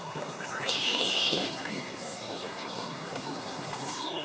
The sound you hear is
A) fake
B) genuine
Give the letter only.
A